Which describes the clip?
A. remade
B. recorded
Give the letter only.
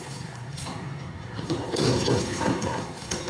A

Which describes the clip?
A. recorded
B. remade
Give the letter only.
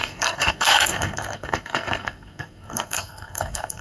B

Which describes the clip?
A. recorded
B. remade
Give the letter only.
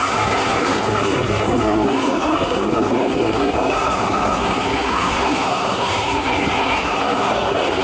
B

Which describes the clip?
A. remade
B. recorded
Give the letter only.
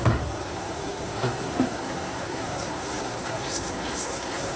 A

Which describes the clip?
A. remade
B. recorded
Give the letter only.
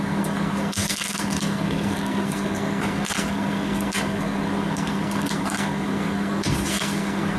A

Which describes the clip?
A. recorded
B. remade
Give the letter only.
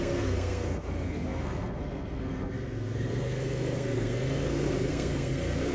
B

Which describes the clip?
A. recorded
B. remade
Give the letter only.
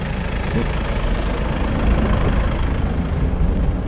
A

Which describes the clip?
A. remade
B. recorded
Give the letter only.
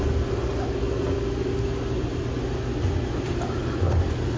B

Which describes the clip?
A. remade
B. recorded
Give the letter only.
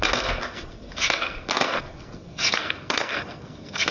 A